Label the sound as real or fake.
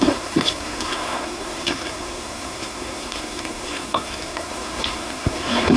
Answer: fake